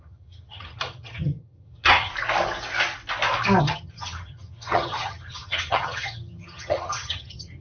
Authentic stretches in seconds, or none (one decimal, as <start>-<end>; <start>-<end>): 2.1-3.6